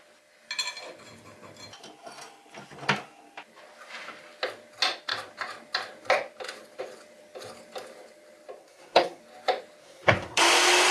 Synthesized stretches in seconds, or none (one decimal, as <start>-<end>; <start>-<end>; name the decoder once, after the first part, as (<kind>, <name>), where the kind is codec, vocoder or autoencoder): 8.6-9.2 (codec, SNAC); 9.8-10.4